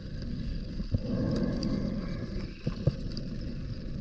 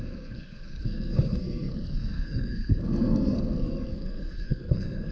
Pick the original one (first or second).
first